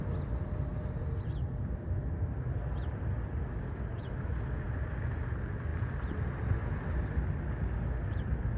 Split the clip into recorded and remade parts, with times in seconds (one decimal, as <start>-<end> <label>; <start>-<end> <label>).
0.0-8.6 recorded